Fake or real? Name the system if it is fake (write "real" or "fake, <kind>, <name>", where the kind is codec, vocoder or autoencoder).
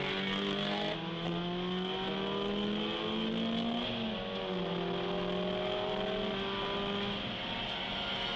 real